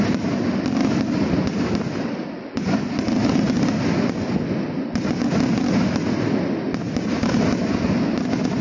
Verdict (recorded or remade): recorded